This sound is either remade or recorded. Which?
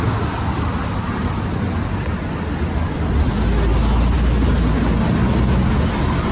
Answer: recorded